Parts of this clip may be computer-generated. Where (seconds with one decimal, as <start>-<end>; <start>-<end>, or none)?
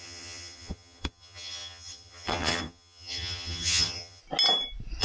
0.0-4.2